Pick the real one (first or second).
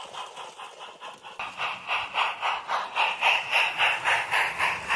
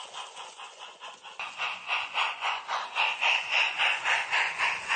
first